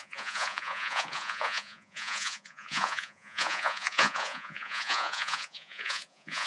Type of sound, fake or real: fake